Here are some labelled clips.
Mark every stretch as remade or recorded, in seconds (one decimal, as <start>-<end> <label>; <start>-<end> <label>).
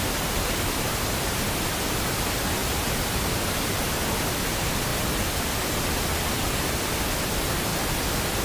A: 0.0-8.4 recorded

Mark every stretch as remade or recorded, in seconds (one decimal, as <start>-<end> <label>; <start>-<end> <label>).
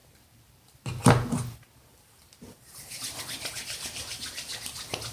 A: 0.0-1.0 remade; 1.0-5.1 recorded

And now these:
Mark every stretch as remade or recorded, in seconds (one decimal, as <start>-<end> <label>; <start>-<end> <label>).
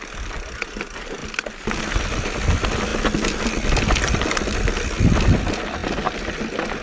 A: 0.0-6.8 recorded